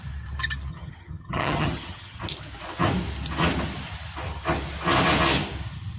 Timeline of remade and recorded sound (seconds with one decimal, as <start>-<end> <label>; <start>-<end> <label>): 0.0-0.7 recorded; 0.7-2.2 remade; 2.2-6.0 recorded

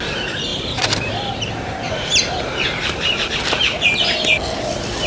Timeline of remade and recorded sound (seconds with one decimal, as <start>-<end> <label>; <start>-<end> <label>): 0.0-0.5 recorded; 0.5-3.6 remade; 3.6-5.1 recorded

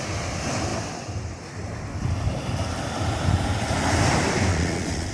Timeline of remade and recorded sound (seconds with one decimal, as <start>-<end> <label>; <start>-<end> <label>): 0.0-4.5 recorded; 4.5-5.1 remade

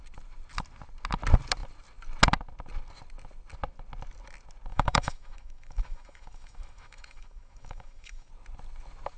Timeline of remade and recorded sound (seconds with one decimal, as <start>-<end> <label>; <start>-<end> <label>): 0.0-4.7 recorded; 4.7-8.3 remade; 8.3-9.2 recorded

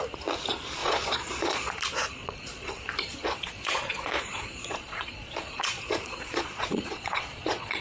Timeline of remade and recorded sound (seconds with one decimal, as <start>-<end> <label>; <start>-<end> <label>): 0.0-0.8 recorded; 0.8-1.7 remade; 1.7-2.2 recorded; 2.2-2.7 remade; 2.7-3.1 recorded; 3.1-7.8 remade

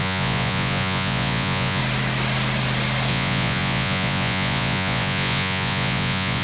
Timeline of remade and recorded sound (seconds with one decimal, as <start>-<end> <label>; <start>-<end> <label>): 0.0-1.8 remade; 1.8-3.1 recorded; 3.1-6.4 remade

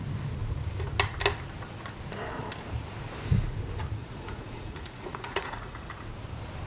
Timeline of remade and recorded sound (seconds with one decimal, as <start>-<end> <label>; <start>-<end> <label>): 0.0-4.0 recorded; 4.0-5.9 remade; 5.9-6.7 recorded